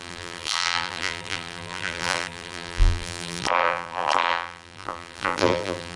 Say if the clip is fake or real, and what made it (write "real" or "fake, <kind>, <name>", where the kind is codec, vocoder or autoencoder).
fake, vocoder, BigVGAN v2